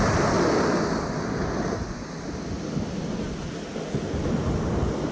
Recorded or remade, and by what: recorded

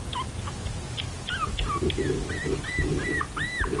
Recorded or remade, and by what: recorded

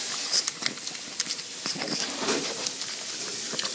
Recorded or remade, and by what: recorded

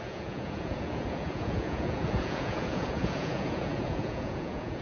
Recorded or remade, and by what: remade, vocoder, Vocos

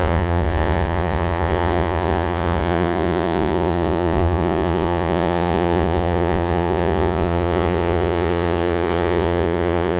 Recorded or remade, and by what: remade, vocoder, Vocos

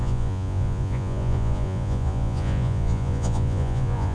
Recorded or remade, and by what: remade, vocoder, Vocos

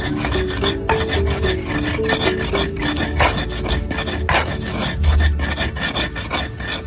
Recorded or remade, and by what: recorded